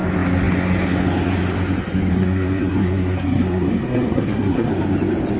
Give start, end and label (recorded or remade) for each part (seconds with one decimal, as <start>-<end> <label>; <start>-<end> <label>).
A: 0.0-2.1 recorded; 2.1-4.7 remade; 4.7-5.4 recorded